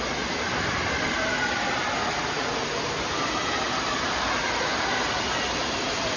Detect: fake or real real